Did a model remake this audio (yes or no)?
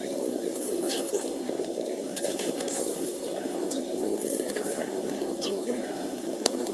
yes